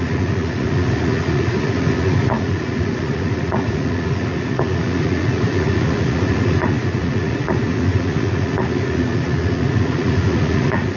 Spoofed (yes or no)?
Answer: yes